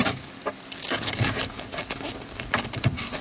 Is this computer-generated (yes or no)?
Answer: no